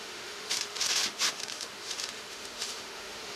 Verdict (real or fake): fake